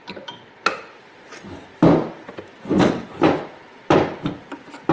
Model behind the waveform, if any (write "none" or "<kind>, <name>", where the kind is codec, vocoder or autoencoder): none